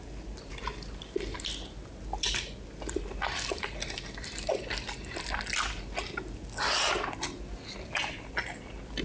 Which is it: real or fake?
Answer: real